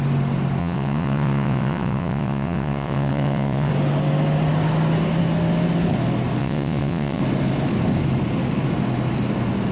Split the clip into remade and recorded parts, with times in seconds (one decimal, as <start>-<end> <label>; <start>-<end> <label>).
0.0-0.6 recorded; 0.6-3.7 remade; 3.7-6.4 recorded; 6.4-7.2 remade; 7.2-9.7 recorded

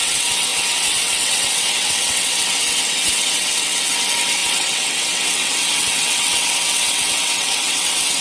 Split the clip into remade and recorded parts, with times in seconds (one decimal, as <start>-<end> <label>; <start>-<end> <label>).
0.0-8.2 remade

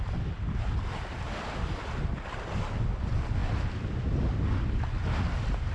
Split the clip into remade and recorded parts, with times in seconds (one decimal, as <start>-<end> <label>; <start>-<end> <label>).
0.0-5.7 recorded

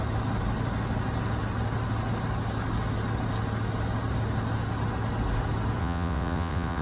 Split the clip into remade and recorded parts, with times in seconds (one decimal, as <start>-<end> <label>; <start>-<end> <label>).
0.0-5.8 recorded; 5.8-6.8 remade

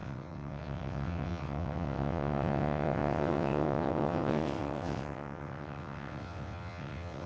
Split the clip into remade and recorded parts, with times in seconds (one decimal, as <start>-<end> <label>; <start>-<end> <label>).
0.0-7.3 remade